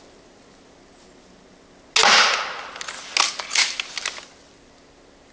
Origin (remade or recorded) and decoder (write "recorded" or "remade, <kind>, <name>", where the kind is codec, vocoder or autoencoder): recorded